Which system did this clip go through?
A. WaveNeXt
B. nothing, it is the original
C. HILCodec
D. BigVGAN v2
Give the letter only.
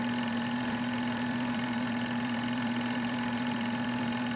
D